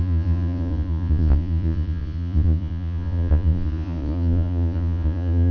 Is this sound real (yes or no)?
no